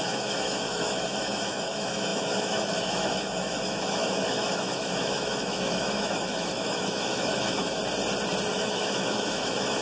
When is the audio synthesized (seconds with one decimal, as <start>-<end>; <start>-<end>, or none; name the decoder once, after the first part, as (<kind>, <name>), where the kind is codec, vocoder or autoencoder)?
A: 0.0-7.8 (autoencoder, DAC-VAE); 8.5-9.8